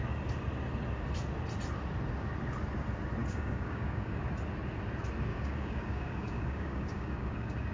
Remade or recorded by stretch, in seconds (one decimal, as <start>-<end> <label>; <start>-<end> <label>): 0.0-3.2 recorded; 3.2-4.2 remade; 4.2-5.3 recorded; 5.3-7.7 remade